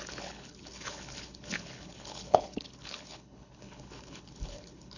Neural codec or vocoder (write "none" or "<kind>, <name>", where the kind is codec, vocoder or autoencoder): codec, HILCodec